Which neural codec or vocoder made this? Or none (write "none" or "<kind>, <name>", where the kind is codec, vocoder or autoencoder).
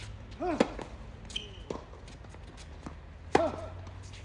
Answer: none